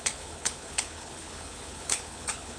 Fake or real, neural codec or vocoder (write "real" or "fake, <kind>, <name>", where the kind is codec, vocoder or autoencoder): fake, codec, HILCodec